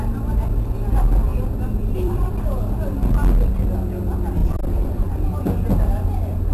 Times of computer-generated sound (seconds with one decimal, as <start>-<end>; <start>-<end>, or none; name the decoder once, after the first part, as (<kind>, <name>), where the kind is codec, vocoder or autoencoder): 1.3-2.3 (vocoder, BigVGAN v2); 4.4-4.9